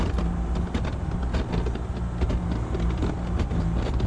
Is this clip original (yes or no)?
yes